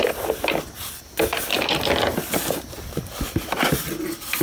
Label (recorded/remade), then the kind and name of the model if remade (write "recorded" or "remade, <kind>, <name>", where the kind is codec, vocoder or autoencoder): recorded